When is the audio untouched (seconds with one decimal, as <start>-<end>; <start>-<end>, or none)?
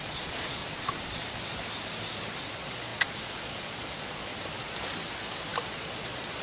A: 0.6-2.4; 4.3-5.6